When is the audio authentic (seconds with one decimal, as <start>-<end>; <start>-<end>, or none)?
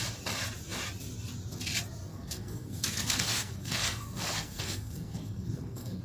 0.0-2.1